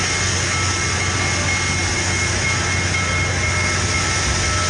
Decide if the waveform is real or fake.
real